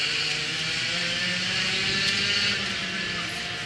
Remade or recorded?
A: recorded